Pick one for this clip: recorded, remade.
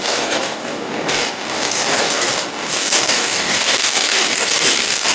remade